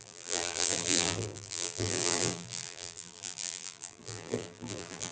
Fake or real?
fake